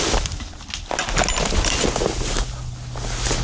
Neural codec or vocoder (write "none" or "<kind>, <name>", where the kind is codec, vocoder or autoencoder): none